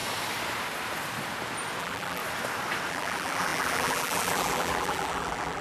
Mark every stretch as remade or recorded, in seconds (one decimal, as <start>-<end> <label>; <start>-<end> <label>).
0.0-1.8 recorded; 1.8-2.2 remade; 2.2-2.9 recorded; 2.9-5.6 remade